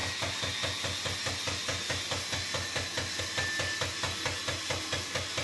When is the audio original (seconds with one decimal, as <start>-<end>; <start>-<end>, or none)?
0.0-5.4